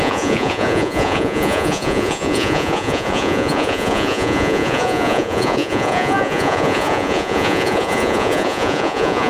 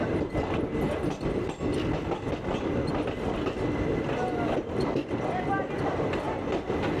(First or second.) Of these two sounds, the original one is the second